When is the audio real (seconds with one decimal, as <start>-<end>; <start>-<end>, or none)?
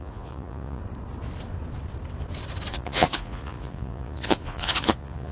0.8-2.7